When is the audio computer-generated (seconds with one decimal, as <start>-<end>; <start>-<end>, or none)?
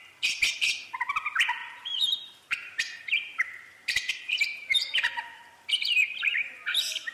1.6-5.7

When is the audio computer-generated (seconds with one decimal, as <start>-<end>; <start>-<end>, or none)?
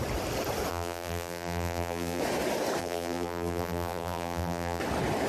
0.7-2.2; 2.8-4.8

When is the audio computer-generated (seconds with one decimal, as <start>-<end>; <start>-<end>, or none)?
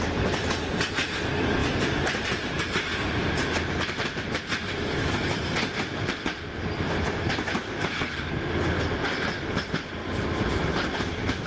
none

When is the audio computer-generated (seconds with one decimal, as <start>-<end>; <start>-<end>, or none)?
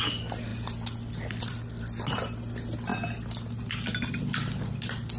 0.0-0.5; 1.5-2.9; 4.1-5.2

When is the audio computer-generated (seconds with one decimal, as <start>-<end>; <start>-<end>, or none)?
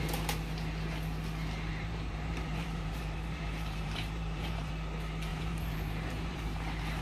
1.7-4.7; 5.3-6.4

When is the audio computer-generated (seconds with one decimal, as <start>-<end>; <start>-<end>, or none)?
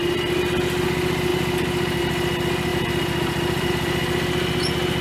2.7-3.7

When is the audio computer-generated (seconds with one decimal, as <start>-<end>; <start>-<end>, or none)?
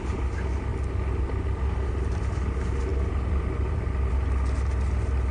0.0-5.3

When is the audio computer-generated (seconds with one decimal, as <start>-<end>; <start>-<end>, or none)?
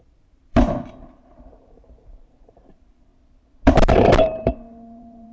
0.0-3.1; 3.7-5.3